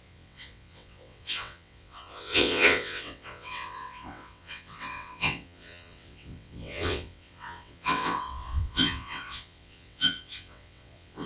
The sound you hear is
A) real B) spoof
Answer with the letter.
B